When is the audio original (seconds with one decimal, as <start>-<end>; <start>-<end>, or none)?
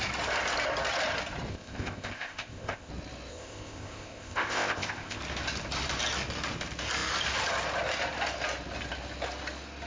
0.0-1.5; 2.9-3.3; 5.2-9.9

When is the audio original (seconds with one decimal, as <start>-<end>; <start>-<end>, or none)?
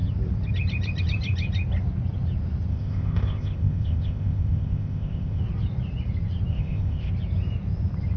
0.0-2.7; 5.4-6.5; 7.1-8.2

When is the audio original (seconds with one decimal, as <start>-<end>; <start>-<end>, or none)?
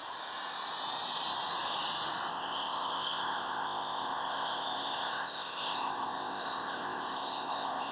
0.0-2.3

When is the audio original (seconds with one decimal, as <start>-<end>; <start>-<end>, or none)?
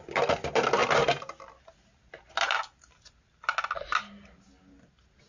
0.0-5.3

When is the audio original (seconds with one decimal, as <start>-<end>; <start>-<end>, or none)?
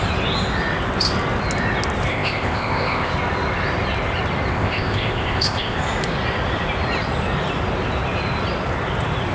0.0-2.1; 3.1-4.5; 5.8-9.3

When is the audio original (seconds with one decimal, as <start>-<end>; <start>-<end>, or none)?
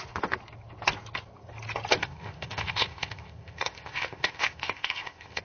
0.0-2.0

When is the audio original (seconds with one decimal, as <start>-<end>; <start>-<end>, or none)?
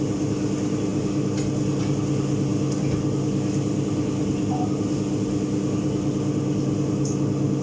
0.0-7.6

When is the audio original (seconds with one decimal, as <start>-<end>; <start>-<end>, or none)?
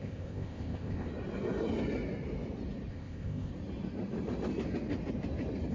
1.1-2.9; 3.5-5.7